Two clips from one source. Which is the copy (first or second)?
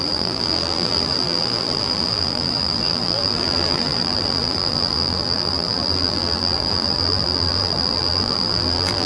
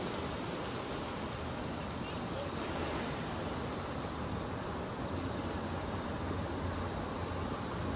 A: first